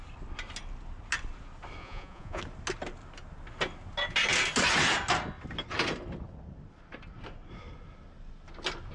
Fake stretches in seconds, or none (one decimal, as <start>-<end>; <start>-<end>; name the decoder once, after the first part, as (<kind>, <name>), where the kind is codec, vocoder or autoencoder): 1.8-2.4 (vocoder, Vocos)